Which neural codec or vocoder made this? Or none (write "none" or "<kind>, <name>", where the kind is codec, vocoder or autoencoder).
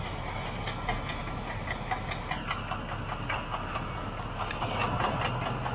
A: none